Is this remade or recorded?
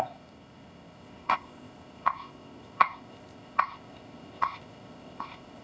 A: remade